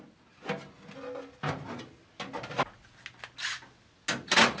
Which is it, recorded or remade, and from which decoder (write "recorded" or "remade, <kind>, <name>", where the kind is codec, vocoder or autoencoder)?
recorded